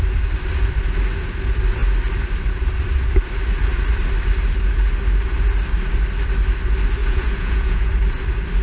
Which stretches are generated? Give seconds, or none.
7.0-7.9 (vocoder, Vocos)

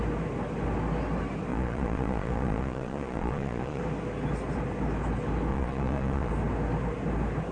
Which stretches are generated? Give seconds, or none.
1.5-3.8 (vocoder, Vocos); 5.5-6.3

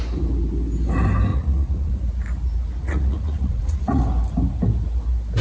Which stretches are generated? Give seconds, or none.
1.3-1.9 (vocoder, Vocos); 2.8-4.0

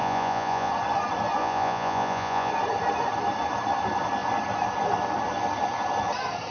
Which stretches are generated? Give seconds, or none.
0.0-0.7 (vocoder, Vocos); 1.4-2.5